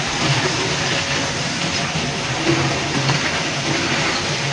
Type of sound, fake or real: real